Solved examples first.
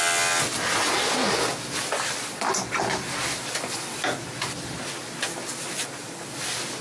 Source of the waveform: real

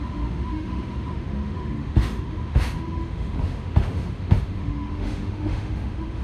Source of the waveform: fake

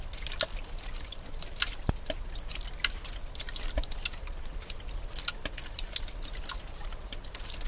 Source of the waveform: real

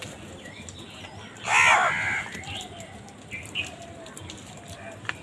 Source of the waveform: real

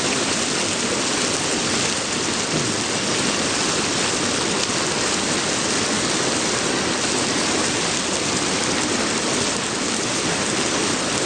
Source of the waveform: real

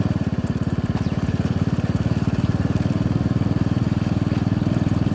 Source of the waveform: real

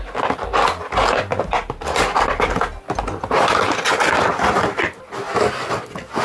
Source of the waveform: real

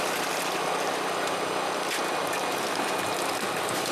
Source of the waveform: real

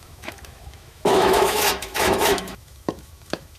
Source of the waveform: fake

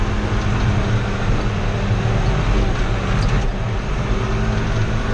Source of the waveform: real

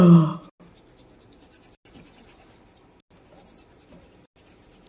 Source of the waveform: real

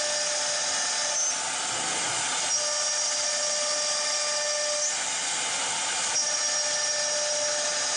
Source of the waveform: real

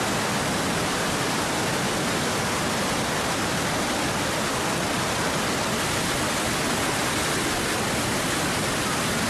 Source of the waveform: real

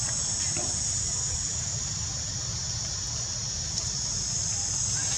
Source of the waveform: real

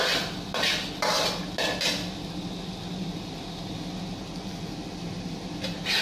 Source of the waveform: real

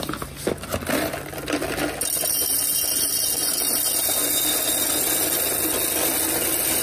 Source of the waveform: real